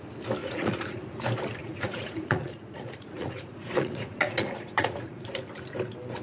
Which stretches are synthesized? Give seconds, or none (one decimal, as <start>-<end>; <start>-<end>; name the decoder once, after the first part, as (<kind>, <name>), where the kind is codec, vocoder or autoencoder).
0.4-1.0 (vocoder, Vocos); 1.6-5.3